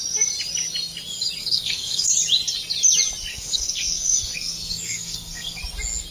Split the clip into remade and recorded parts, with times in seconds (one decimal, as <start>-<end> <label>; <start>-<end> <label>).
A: 0.0-1.4 recorded; 1.4-2.1 remade; 2.1-3.3 recorded; 3.3-5.6 remade; 5.6-6.1 recorded

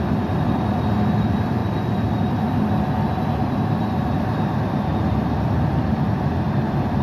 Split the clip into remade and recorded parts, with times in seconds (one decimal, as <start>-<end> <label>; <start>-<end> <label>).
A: 0.0-7.0 remade

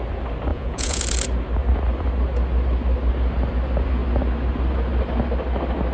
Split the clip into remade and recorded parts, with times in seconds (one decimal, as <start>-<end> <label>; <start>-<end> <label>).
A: 0.0-0.5 recorded; 0.5-1.0 remade; 1.0-5.9 recorded

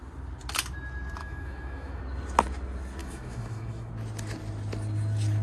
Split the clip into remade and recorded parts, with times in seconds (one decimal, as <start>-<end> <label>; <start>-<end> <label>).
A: 0.0-1.2 recorded; 1.2-2.0 remade; 2.0-3.0 recorded; 3.0-3.9 remade; 3.9-5.4 recorded